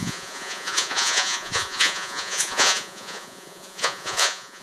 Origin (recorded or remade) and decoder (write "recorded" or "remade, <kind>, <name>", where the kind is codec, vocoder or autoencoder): remade, vocoder, Vocos